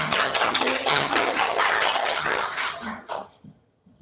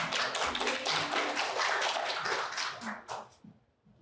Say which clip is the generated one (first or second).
first